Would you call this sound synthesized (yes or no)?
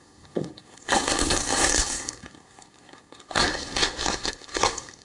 yes